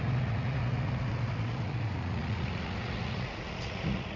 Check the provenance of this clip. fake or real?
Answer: fake